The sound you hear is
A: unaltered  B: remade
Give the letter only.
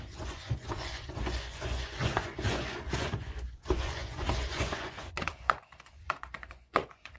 B